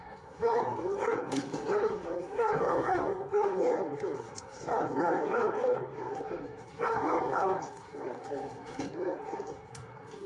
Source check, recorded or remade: remade